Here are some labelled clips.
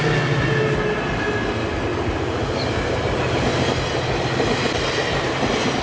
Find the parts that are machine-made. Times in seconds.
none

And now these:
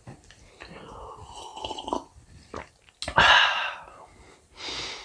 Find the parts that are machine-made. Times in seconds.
none